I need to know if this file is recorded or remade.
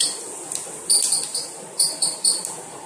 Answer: recorded